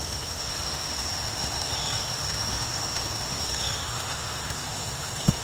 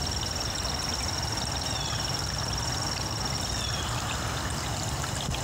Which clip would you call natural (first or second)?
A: second